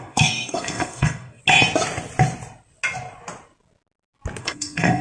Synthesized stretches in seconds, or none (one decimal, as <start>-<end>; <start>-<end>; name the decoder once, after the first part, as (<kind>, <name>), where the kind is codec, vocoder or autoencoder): 0.0-1.4 (codec, SNAC); 4.4-5.0